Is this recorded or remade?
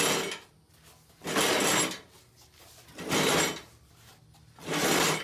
recorded